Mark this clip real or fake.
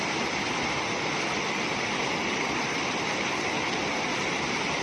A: real